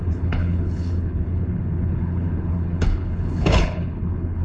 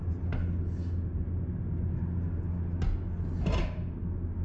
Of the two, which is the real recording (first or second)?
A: second